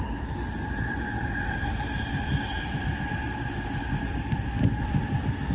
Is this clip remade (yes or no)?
no